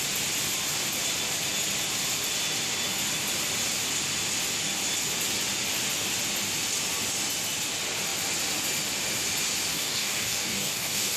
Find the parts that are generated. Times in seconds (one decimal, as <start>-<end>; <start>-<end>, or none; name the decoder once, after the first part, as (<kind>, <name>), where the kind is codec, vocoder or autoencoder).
9.7-11.2 (codec, DAC)

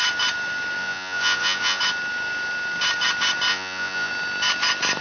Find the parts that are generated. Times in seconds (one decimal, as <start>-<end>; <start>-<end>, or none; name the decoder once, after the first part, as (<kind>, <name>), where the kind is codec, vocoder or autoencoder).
0.8-1.8 (vocoder, Vocos); 3.5-4.1

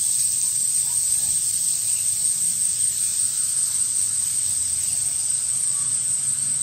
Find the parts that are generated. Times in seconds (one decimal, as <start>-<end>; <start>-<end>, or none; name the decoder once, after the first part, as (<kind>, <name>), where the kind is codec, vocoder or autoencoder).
none

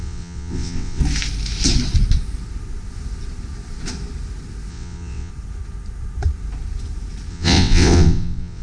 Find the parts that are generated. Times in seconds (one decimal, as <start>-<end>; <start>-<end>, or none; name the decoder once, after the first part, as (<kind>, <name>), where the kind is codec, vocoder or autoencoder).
0.0-1.0 (vocoder, WaveNeXt); 4.7-5.3; 7.3-8.6

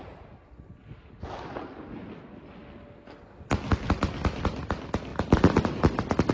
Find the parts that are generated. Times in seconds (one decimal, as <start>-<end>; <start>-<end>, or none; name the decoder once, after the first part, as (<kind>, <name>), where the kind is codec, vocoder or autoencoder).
none

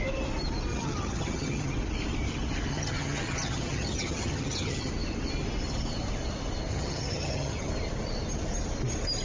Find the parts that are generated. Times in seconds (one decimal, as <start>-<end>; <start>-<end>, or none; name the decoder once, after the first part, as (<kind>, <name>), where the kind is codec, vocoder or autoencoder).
0.7-1.7 (vocoder, HiFi-GAN); 2.7-4.9; 6.7-7.7

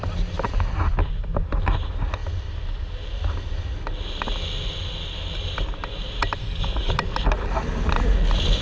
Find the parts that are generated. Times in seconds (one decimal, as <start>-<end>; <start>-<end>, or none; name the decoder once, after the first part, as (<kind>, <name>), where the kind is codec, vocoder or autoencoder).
6.4-6.9 (codec, DAC)

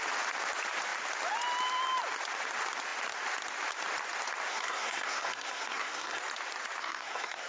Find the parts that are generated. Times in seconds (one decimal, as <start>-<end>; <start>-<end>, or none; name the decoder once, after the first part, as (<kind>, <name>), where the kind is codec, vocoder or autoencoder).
4.5-6.2 (codec, SNAC); 6.8-7.5